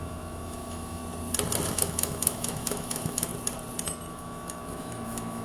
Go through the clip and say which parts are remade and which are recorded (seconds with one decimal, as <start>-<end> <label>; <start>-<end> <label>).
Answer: 0.0-1.0 remade; 1.0-1.7 recorded; 1.7-3.3 remade; 3.3-4.1 recorded; 4.1-5.4 remade